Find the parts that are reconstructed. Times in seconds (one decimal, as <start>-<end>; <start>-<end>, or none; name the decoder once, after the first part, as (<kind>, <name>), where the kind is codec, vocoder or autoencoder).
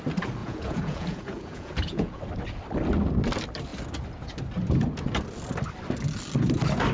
0.4-2.2 (vocoder, Vocos)